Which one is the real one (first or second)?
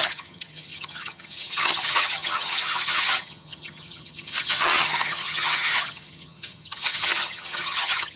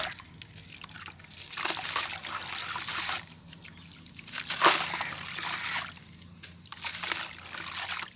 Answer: second